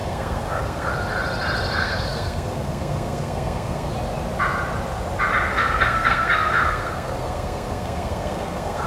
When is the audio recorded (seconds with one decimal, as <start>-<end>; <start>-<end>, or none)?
0.9-1.8; 3.9-5.5